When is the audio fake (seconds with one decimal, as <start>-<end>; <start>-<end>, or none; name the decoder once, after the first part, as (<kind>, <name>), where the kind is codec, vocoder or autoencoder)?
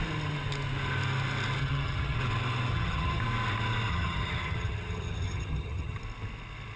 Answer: 1.6-2.2 (vocoder, HiFi-GAN); 2.7-3.2; 3.9-6.0